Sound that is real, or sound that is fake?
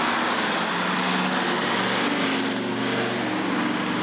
real